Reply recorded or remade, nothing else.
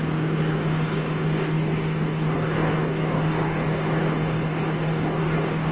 remade